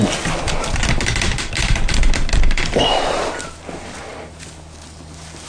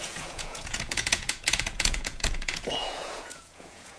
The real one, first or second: first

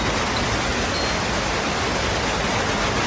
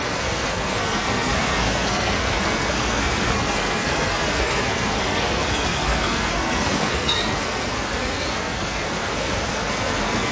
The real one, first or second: first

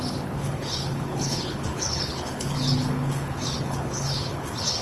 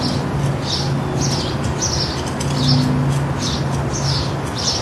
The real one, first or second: second